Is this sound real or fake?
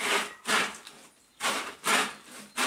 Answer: fake